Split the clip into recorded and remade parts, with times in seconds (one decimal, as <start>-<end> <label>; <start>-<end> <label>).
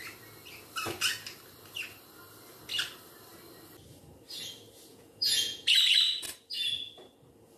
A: 0.0-4.9 recorded; 4.9-5.8 remade; 5.8-7.6 recorded